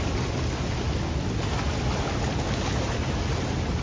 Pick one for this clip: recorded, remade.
recorded